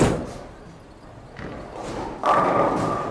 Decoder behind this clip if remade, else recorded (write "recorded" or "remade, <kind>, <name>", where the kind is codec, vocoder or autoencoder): recorded